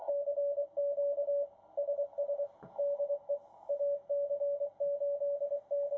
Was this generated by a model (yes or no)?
no